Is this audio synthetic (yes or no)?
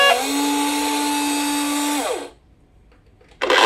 no